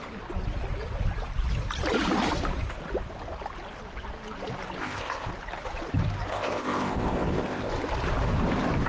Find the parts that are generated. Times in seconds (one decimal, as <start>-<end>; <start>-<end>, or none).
4.8-5.3; 6.3-7.7